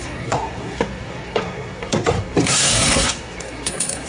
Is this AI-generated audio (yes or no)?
yes